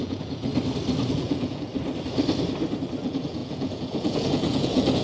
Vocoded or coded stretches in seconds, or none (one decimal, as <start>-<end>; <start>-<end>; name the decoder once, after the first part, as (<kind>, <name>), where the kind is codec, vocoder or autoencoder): 0.0-0.5 (vocoder, Vocos); 1.1-1.7; 3.0-5.0